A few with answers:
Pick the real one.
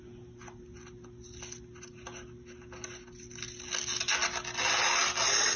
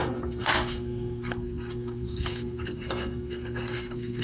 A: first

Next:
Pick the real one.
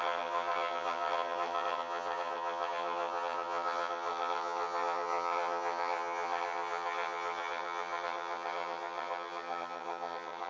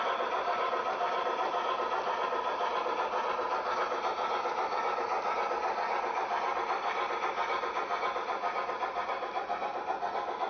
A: second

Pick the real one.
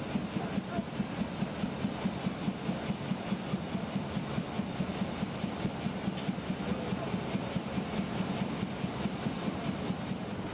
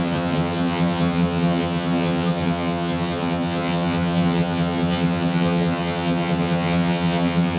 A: first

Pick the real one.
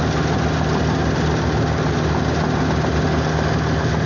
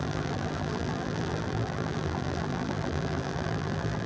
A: first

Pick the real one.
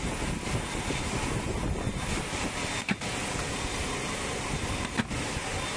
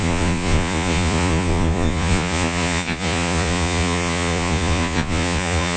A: first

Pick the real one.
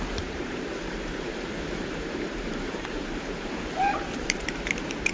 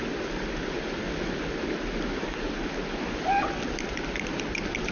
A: second